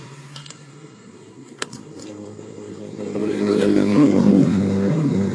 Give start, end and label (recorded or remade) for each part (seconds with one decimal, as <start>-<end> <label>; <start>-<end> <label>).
0.0-5.3 remade